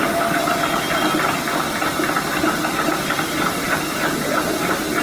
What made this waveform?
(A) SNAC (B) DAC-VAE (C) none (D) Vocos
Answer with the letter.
C